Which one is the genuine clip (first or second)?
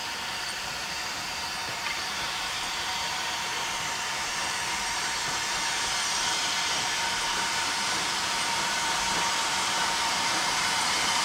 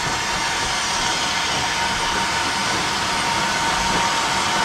second